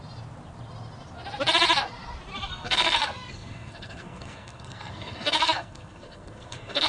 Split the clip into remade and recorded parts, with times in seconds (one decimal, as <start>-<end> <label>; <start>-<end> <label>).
0.0-2.5 recorded; 2.5-6.9 remade

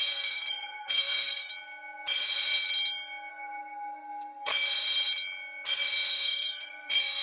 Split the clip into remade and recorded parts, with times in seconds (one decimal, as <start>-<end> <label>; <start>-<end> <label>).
0.0-1.5 remade; 1.5-3.3 recorded; 3.3-4.5 remade; 4.5-6.1 recorded; 6.1-7.2 remade

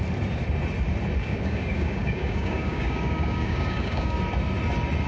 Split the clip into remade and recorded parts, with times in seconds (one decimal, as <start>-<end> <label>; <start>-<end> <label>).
0.0-1.2 recorded; 1.2-4.2 remade; 4.2-5.1 recorded

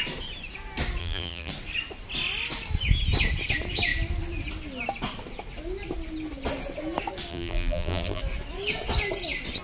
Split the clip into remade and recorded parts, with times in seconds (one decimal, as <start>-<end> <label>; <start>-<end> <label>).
0.0-1.0 recorded; 1.0-1.5 remade; 1.5-7.3 recorded; 7.3-8.2 remade; 8.2-9.6 recorded

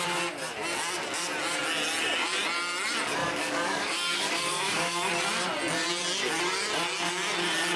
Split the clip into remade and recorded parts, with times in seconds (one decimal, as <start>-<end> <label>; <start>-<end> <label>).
0.0-3.2 recorded; 3.2-5.1 remade; 5.1-7.8 recorded